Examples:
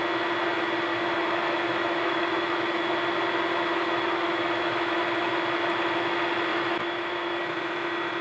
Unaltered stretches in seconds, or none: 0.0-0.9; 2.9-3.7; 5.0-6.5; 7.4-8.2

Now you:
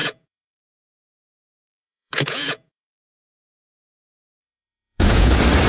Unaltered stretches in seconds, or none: 3.3-4.4; 5.3-5.7

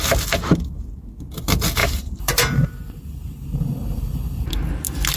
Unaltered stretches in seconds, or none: 0.0-1.8; 4.2-5.2

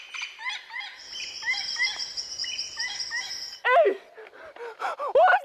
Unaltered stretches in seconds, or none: 0.0-5.4

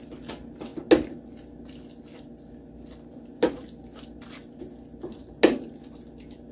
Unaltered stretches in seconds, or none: 0.0-6.5